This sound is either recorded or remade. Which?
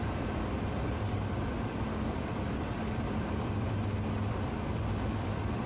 remade